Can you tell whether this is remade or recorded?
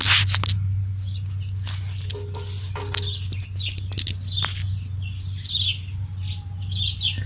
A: recorded